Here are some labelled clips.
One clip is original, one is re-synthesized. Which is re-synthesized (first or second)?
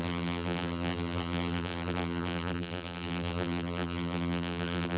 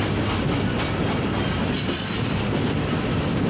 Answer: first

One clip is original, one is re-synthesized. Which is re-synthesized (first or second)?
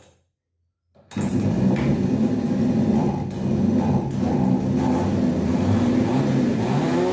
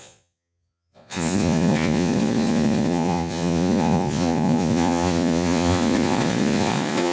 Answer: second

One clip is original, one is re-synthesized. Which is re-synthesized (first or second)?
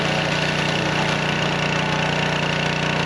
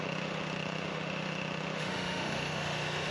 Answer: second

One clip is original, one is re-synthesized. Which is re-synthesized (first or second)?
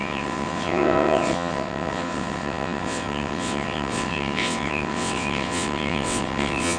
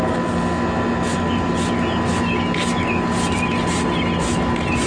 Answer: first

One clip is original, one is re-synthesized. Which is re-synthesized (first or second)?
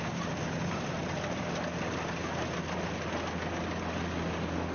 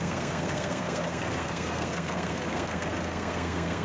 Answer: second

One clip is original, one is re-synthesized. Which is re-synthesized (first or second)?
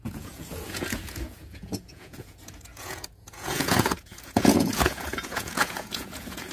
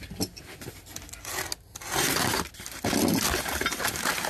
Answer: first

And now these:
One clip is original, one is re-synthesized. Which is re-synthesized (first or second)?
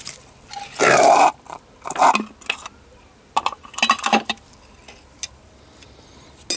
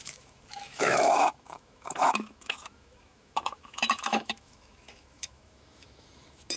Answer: second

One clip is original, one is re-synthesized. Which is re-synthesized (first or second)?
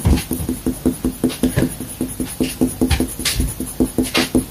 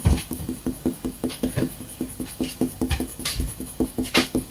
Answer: second